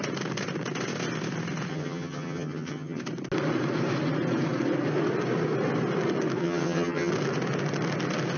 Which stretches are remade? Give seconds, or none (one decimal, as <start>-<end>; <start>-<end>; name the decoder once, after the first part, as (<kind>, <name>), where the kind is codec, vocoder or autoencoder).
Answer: 1.7-3.0 (vocoder, HiFi-GAN); 6.4-7.1